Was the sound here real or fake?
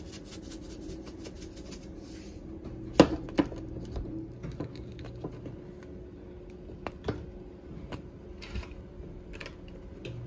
real